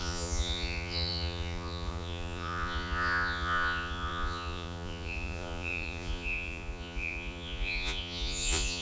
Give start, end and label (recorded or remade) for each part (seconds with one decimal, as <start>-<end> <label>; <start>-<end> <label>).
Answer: 0.0-8.8 remade